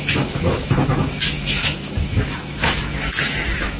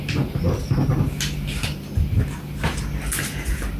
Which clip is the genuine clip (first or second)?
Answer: second